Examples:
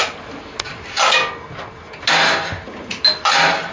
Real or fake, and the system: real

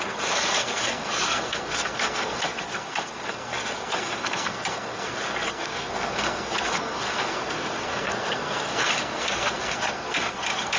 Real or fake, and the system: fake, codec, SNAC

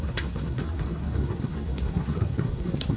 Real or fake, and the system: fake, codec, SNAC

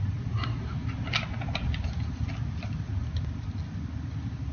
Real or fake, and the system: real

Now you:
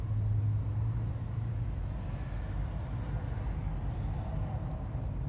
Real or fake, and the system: real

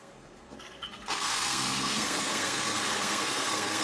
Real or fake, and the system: fake, codec, SNAC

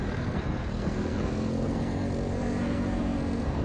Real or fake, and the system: fake, codec, SNAC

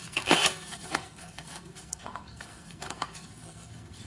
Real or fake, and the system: fake, codec, SNAC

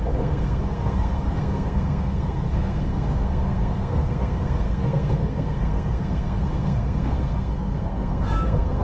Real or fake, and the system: fake, codec, SNAC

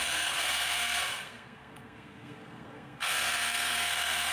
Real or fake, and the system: fake, codec, SNAC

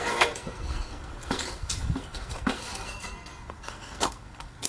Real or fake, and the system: fake, codec, SNAC